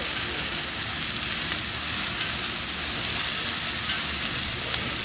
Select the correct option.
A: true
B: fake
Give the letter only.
A